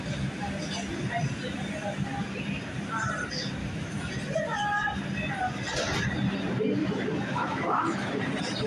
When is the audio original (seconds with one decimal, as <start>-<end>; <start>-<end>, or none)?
0.0-3.6; 4.1-6.8; 8.1-8.7